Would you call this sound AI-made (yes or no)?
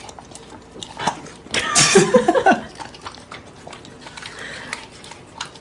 no